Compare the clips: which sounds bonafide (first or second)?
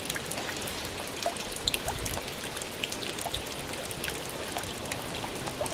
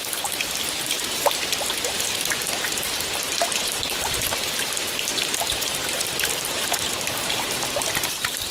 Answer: first